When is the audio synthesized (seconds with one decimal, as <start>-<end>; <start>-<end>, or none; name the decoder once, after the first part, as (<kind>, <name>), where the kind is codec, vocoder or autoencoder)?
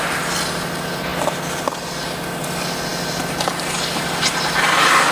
none